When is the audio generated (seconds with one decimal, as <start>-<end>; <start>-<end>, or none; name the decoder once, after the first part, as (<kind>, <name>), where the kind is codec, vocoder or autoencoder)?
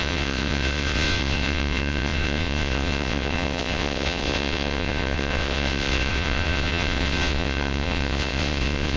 0.0-9.0 (vocoder, WaveNeXt)